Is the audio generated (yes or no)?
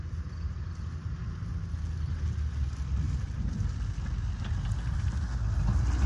no